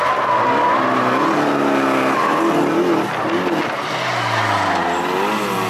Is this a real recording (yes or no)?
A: yes